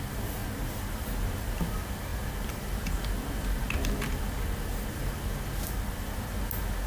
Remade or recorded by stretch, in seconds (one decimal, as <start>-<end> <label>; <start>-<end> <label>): 0.0-6.9 recorded